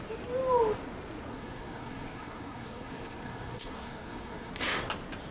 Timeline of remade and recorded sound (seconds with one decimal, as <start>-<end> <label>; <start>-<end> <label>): 0.0-1.3 recorded; 1.3-4.5 remade; 4.5-5.3 recorded

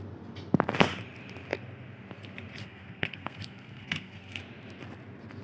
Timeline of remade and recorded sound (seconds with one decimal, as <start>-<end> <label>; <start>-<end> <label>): 0.0-2.6 recorded; 2.6-4.4 remade; 4.4-5.4 recorded

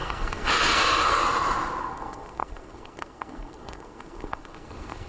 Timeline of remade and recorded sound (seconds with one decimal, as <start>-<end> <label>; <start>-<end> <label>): 0.0-1.2 remade; 1.2-1.8 recorded; 1.8-5.1 remade

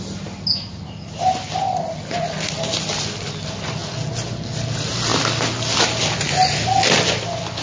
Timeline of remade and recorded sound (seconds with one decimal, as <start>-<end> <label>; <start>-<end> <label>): 0.0-7.6 recorded

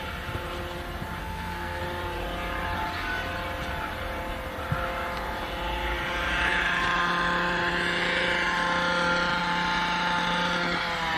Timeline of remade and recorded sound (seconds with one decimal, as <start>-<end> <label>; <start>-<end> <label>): 0.0-1.2 recorded; 1.2-1.8 remade; 1.8-11.2 recorded

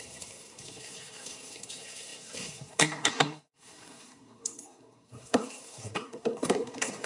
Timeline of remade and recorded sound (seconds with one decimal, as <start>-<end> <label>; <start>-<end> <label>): 0.0-7.1 remade

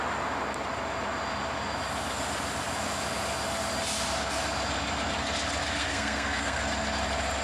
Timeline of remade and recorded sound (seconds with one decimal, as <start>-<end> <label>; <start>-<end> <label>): 0.0-5.8 recorded; 5.8-6.6 remade; 6.6-7.4 recorded